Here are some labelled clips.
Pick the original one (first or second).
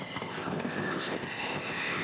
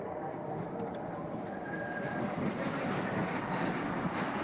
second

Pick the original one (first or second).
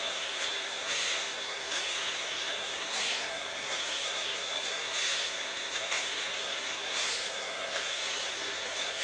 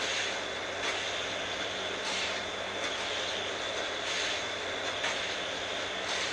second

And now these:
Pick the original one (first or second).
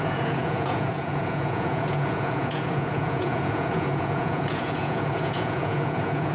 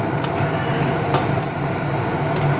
second